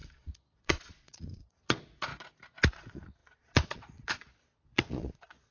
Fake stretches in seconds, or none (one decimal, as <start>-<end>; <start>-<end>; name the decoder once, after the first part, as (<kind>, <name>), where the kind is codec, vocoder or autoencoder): 0.0-2.1 (vocoder, Vocos); 2.7-5.5